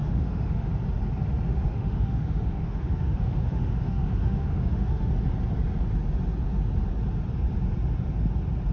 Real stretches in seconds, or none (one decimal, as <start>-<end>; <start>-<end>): 0.7-1.5; 5.1-8.7